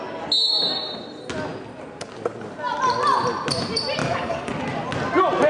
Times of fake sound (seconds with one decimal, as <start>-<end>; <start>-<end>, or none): 4.0-4.5